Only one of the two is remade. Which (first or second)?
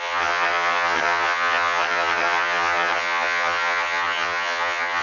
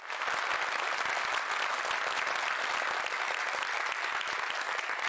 first